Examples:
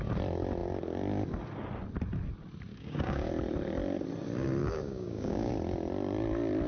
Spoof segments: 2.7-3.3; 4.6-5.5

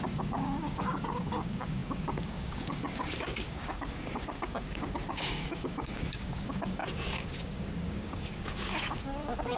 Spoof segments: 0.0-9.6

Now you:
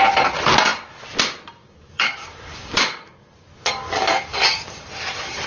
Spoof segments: 1.6-4.9

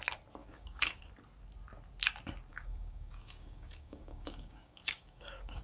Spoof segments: 0.4-1.0; 2.5-5.6

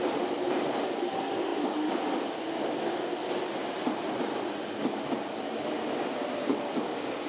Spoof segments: 6.5-7.3

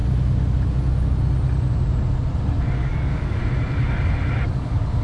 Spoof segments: 2.7-3.4; 4.5-5.0

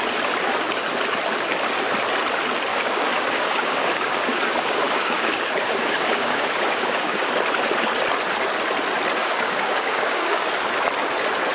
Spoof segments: 2.7-7.3; 9.2-10.5